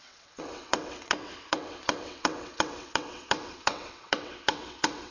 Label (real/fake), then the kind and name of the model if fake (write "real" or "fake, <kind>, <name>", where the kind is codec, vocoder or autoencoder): fake, vocoder, WaveNeXt